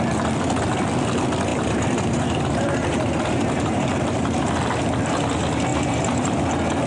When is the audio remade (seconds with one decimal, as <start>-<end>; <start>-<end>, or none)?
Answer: 1.5-4.5; 5.7-6.4